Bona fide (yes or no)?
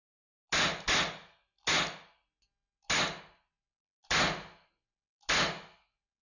yes